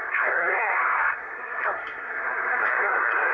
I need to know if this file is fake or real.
fake